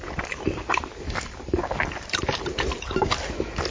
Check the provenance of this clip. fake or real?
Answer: fake